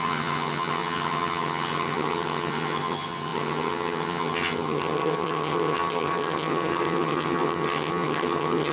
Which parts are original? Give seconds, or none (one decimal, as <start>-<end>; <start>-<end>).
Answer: none